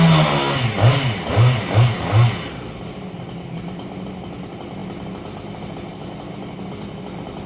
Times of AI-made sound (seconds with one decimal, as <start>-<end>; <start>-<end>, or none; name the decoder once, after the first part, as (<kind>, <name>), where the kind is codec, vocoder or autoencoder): none